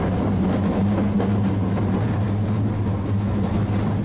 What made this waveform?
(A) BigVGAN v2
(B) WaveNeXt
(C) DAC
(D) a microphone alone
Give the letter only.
D